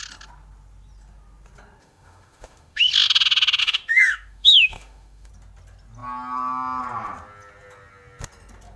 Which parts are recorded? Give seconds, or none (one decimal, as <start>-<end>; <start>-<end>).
0.0-1.8; 2.9-3.6; 5.3-8.8